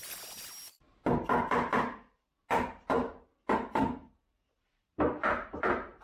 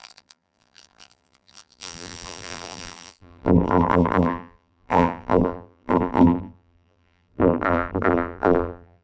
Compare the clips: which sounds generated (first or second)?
second